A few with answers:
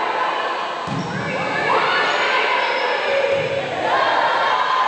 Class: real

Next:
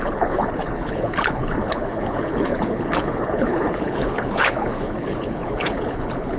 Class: fake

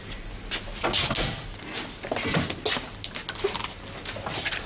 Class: real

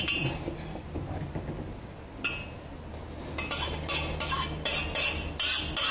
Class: real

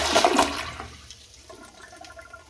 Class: fake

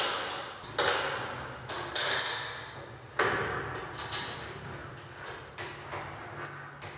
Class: real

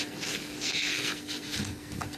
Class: fake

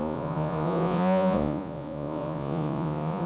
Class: fake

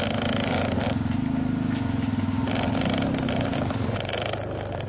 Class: real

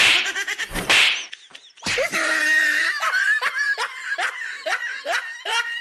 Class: fake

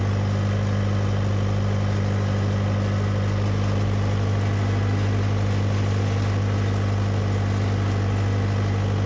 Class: real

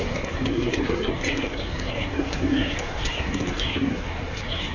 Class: fake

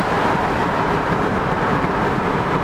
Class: fake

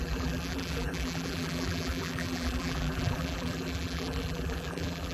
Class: fake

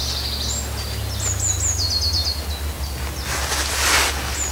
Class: real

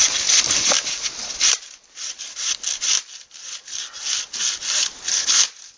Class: real